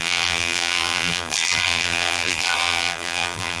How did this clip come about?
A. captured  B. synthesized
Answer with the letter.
B